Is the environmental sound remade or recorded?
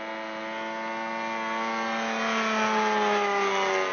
recorded